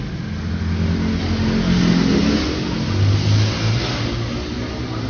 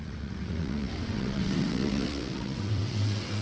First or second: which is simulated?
second